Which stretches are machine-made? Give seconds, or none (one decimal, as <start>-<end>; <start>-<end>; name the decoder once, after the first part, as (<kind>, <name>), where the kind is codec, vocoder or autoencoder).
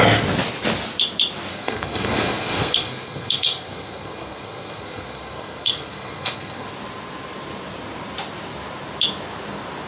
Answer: 1.5-6.7 (codec, SNAC)